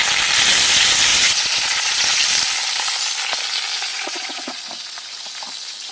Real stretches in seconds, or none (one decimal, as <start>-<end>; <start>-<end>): 0.0-1.1; 2.2-3.9; 4.6-5.9